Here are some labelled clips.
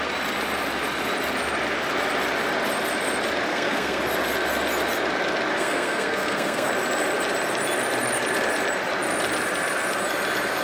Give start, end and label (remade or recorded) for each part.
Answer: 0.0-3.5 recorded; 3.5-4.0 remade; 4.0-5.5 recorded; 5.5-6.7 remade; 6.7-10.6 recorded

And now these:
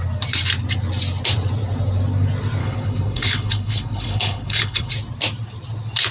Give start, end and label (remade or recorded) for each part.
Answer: 0.0-2.6 recorded; 2.6-4.9 remade; 4.9-6.1 recorded